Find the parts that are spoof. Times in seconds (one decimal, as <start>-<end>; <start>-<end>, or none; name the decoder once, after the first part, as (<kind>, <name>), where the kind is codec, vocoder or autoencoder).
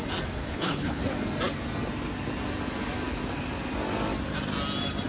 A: 0.4-1.0 (codec, HILCodec)